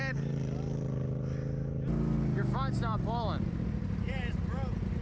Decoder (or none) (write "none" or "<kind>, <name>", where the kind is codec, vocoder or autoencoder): none